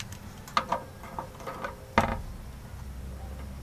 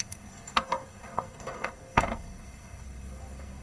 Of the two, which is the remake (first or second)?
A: second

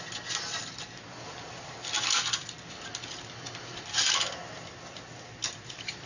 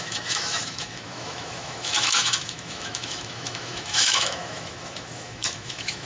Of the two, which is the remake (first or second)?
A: second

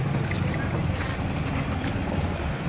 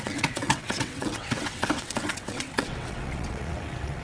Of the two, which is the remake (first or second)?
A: second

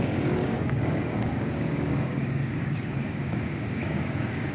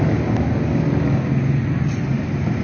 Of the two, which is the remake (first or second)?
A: first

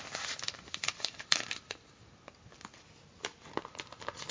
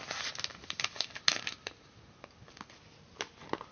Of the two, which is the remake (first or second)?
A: first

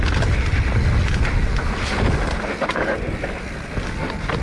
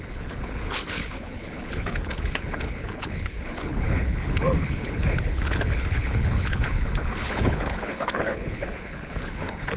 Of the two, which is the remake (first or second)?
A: second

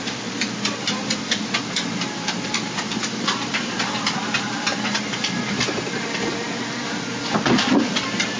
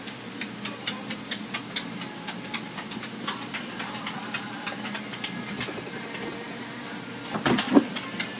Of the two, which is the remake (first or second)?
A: first